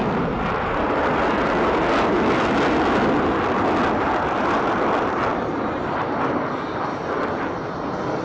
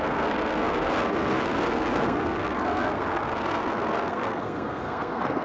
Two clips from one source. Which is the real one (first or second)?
first